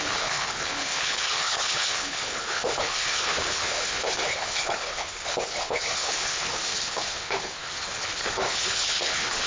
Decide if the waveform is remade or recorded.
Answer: remade